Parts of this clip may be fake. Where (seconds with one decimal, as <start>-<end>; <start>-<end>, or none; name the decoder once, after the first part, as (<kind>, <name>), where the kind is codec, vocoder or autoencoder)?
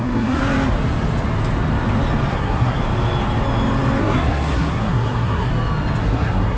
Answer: 0.0-0.4 (codec, SNAC); 2.3-2.8; 4.0-5.5; 6.0-6.6